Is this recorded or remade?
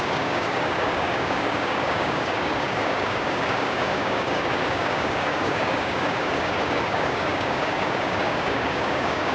remade